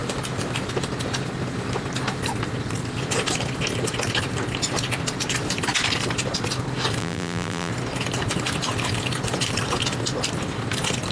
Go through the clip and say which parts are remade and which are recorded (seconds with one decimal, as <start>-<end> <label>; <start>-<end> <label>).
0.0-7.0 recorded; 7.0-7.7 remade; 7.7-11.1 recorded